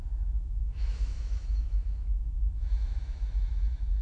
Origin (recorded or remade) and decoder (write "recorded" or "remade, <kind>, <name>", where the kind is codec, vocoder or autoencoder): remade, autoencoder, DAC-VAE